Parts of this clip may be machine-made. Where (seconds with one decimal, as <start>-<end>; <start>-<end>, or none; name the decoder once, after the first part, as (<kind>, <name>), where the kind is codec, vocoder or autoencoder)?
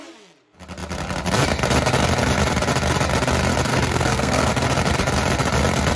3.7-4.5 (codec, SNAC)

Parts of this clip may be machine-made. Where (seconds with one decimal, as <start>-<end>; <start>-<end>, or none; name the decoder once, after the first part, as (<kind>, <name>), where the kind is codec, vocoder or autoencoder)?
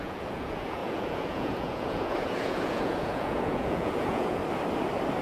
0.0-4.4 (vocoder, Vocos)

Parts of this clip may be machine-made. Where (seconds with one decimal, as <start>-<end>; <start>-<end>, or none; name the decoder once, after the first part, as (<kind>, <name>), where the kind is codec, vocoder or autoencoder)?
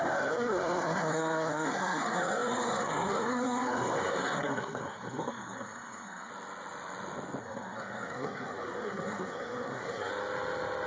0.0-6.3 (codec, SNAC); 7.4-10.1